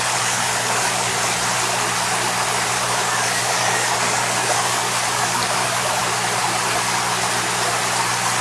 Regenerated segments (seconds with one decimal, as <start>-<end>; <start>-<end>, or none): 0.0-1.1; 2.9-6.0